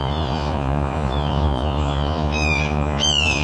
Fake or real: fake